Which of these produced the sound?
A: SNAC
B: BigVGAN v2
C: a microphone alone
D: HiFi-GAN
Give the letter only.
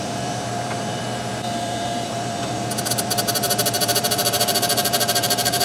B